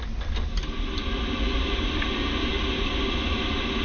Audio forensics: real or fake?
real